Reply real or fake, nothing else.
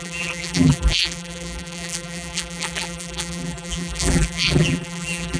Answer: fake